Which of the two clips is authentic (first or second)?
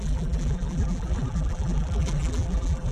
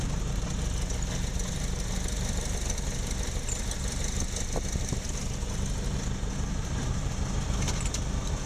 second